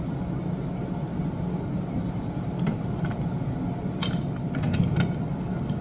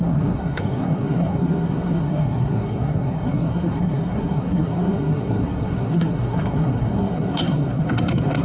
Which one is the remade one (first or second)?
second